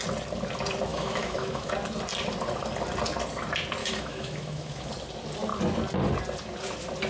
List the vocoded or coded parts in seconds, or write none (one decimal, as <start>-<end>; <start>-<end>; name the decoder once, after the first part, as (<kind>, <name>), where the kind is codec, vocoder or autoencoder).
0.9-1.7 (autoencoder, DAC-VAE); 3.8-4.9